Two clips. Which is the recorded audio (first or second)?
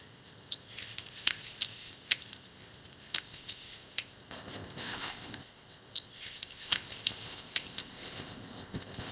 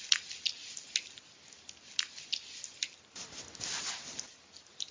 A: second